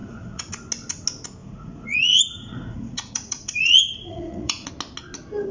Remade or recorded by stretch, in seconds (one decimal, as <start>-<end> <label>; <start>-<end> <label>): 0.0-0.5 remade; 0.5-1.4 recorded; 1.4-4.7 remade; 4.7-5.5 recorded